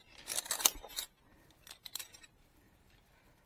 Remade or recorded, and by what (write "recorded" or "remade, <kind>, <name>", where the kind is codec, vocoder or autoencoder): remade, vocoder, BigVGAN v2